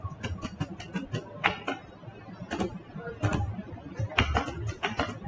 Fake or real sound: real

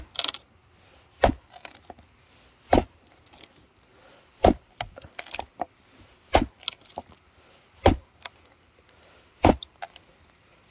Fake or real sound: real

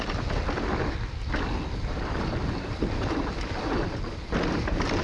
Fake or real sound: fake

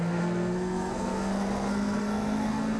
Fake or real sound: fake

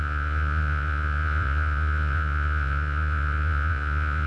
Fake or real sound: fake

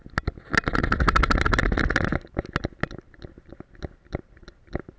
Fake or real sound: real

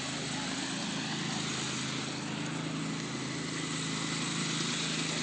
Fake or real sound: real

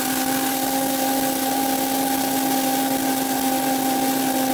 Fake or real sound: real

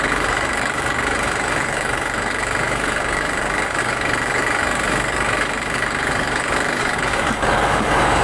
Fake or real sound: fake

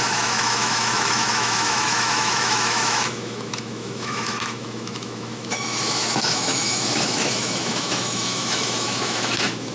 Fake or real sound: fake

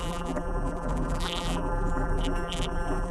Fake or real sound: fake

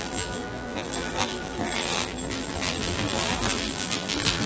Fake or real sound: fake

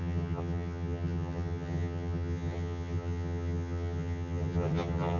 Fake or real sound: fake